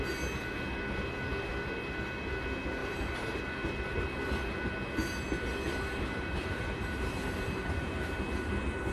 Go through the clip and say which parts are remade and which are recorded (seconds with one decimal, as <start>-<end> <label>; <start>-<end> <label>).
0.0-2.8 recorded; 2.8-3.4 remade; 3.4-5.9 recorded; 5.9-8.5 remade; 8.5-8.9 recorded